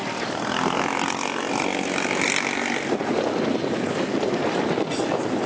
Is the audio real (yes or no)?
yes